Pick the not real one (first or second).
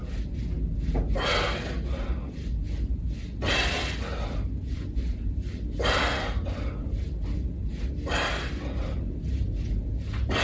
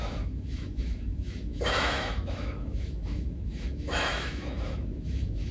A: second